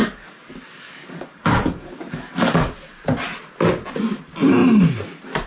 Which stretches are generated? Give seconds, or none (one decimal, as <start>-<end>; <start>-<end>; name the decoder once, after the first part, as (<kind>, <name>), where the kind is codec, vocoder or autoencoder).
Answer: 0.0-2.7 (codec, DAC)